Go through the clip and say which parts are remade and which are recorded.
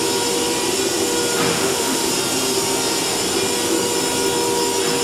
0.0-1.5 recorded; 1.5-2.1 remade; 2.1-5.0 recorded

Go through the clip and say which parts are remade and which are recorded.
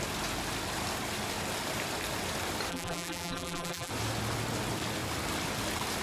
0.0-2.7 recorded; 2.7-3.9 remade; 3.9-6.0 recorded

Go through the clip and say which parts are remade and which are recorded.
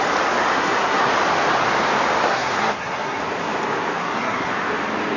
0.0-0.5 recorded; 0.5-1.1 remade; 1.1-2.2 recorded; 2.2-3.2 remade; 3.2-4.0 recorded; 4.0-4.5 remade; 4.5-5.2 recorded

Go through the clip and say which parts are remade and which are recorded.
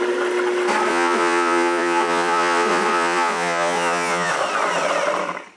0.0-0.9 recorded; 0.9-4.3 remade; 4.3-5.6 recorded